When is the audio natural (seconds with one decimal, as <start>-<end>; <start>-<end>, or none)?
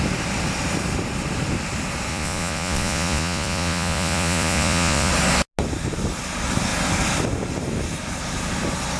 0.0-2.1; 5.1-9.0